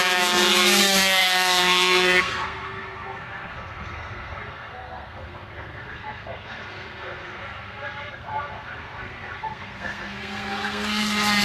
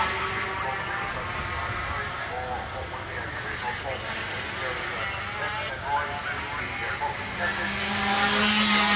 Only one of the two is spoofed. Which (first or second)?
first